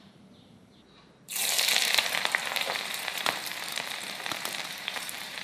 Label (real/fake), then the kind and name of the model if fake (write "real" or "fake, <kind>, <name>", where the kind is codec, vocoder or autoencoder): fake, vocoder, BigVGAN v2